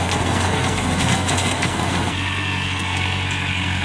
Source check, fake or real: fake